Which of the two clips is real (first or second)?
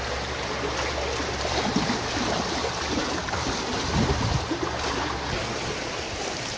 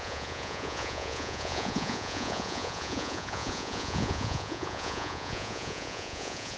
first